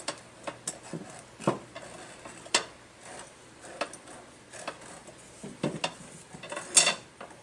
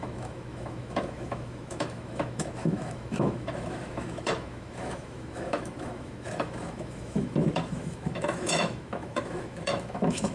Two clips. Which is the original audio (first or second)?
first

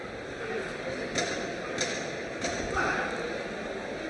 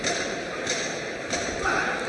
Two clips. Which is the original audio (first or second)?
first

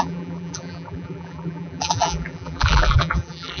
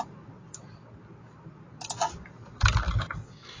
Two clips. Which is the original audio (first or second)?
second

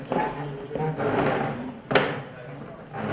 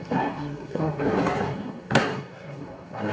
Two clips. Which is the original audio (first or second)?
first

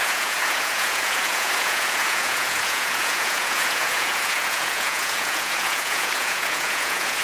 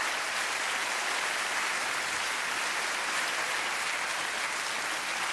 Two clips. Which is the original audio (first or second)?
second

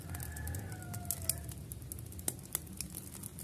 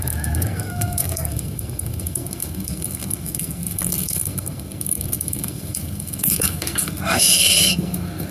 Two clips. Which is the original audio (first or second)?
first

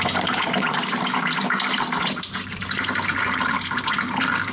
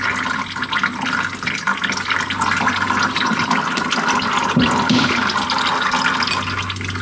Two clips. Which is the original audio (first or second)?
second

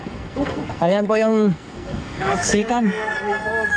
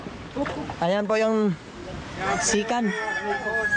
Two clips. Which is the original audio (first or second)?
second